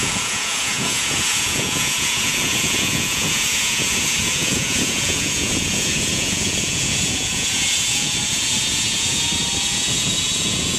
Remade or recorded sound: remade